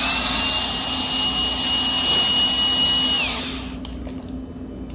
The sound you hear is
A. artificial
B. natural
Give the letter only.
B